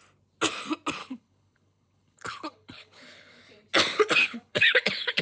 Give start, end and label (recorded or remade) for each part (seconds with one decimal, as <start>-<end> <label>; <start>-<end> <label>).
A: 0.0-1.0 recorded; 1.0-3.4 remade; 3.4-4.2 recorded; 4.2-5.2 remade